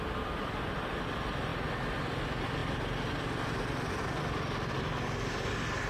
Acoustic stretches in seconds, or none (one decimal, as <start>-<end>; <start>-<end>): 0.0-5.9